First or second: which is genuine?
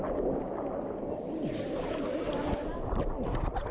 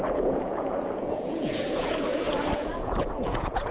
first